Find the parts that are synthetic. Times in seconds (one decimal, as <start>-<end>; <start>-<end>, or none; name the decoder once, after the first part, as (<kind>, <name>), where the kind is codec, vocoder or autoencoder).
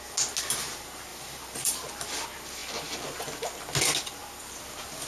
1.1-1.9 (vocoder, BigVGAN v2)